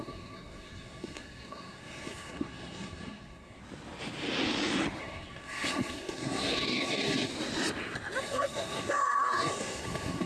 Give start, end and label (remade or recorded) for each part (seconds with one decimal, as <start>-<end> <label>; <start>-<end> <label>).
0.0-3.6 remade; 3.6-5.0 recorded; 5.0-7.3 remade; 7.3-8.2 recorded; 8.2-10.3 remade